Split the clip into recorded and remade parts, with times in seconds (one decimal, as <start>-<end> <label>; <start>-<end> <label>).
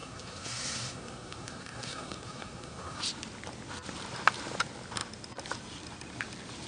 0.0-3.0 remade; 3.0-6.7 recorded